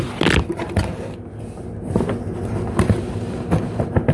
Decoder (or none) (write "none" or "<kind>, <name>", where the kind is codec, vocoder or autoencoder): none